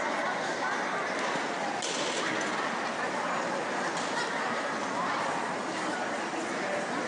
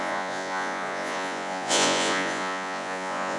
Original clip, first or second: first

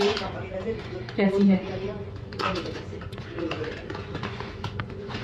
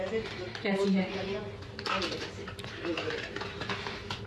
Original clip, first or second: second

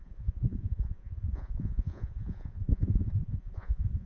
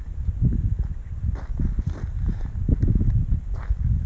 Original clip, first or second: second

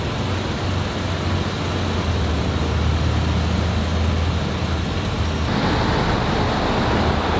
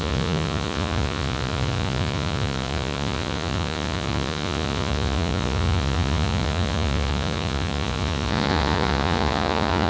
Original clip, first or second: first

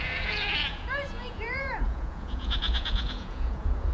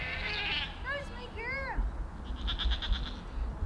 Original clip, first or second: second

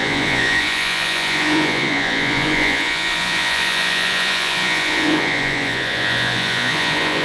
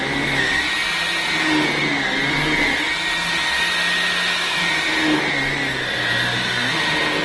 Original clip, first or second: second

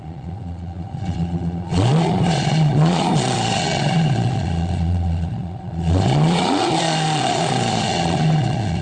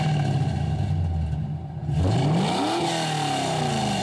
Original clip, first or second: second